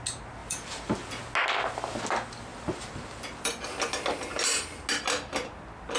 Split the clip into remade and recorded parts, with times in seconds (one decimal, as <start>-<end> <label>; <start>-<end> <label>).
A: 0.0-0.4 recorded; 0.4-1.2 remade; 1.2-2.5 recorded; 2.5-3.6 remade; 3.6-6.0 recorded